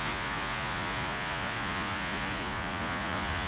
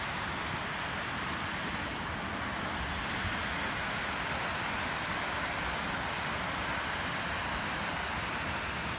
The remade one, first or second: first